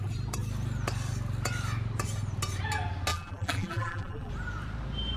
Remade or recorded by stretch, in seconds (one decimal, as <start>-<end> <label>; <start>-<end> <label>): 0.0-3.1 recorded; 3.1-4.3 remade; 4.3-5.2 recorded